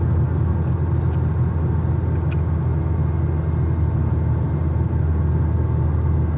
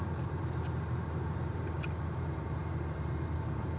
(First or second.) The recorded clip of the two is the first